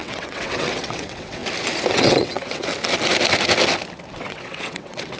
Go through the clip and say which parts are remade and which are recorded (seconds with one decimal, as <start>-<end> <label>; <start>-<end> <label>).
0.0-1.4 remade; 1.4-1.9 recorded; 1.9-2.7 remade; 2.7-4.1 recorded; 4.1-5.2 remade